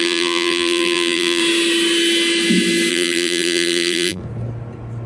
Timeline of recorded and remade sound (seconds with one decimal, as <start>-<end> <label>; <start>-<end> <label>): 0.0-1.4 remade; 1.4-2.9 recorded; 2.9-4.2 remade; 4.2-5.1 recorded